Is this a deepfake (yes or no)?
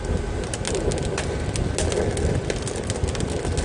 no